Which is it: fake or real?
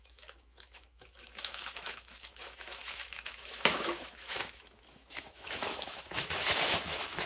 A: fake